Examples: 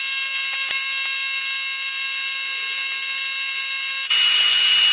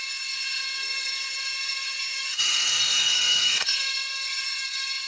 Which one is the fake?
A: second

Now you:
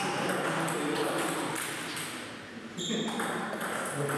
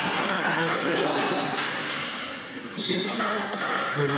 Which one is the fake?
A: second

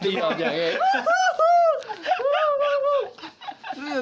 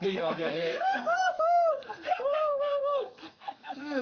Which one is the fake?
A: second